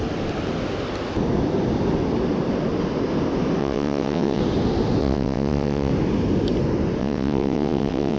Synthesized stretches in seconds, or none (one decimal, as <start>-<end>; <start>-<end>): 3.6-4.4; 5.0-5.9; 7.0-8.2